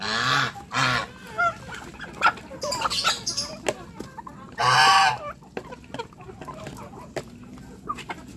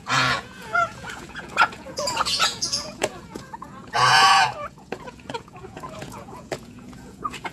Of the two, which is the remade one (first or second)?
second